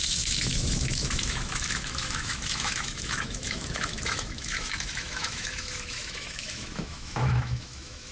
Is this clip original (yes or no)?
no